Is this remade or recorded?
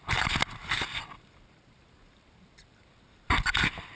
recorded